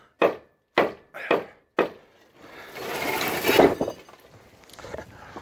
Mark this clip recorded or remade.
recorded